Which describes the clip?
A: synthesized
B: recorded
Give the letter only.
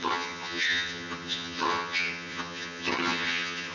A